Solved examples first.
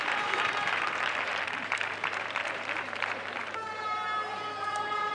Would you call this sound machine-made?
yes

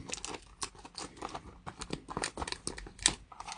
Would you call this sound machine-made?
no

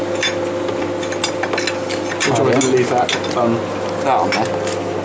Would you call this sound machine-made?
no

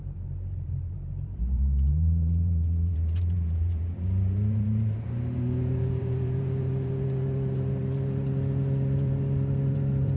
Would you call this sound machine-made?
yes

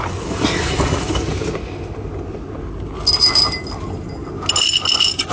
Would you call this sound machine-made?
no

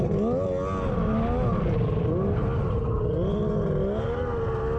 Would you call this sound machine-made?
no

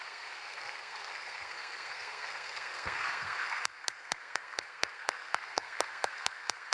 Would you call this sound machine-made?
yes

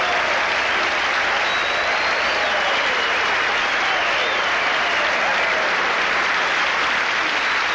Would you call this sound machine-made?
no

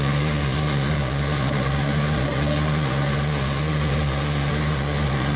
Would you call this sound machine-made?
yes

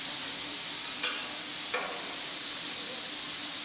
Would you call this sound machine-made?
no